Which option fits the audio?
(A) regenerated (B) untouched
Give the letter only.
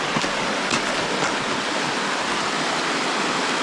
B